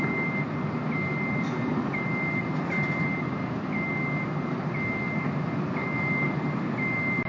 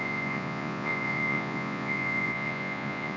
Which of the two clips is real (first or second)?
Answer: first